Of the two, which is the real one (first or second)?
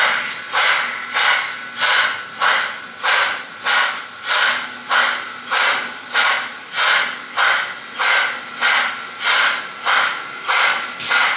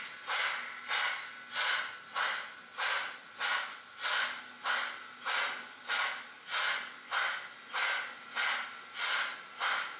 second